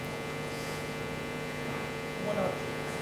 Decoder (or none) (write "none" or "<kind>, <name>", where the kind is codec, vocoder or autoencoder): vocoder, Vocos